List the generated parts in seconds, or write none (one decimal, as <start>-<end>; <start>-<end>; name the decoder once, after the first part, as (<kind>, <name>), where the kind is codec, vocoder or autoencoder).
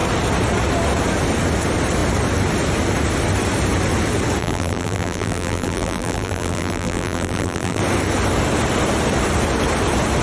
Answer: 4.4-7.8 (vocoder, BigVGAN v2)